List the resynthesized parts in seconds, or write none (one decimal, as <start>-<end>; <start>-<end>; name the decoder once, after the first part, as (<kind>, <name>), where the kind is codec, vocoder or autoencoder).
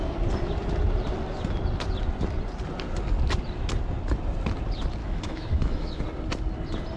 5.0-6.0 (autoencoder, DAC-VAE)